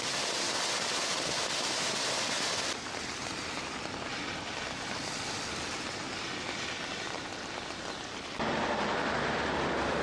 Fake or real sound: real